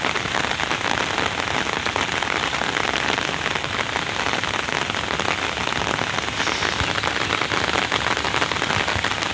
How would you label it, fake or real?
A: real